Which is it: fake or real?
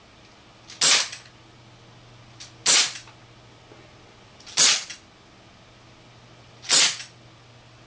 real